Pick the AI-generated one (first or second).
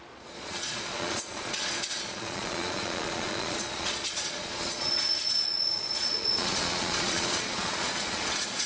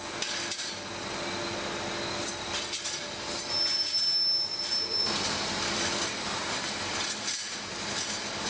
first